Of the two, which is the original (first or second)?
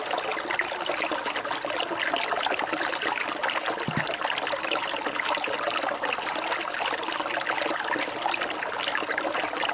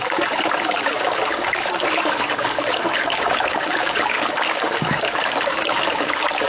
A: first